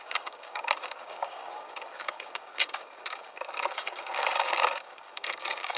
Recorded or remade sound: remade